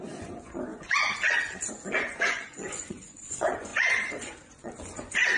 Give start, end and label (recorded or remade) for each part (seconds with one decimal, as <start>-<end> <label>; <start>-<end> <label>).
0.0-5.4 remade